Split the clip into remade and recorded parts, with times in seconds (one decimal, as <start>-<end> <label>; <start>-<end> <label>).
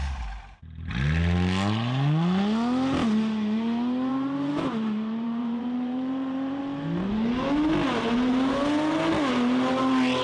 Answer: 0.0-0.9 remade; 0.9-4.1 recorded; 4.1-6.6 remade; 6.6-10.2 recorded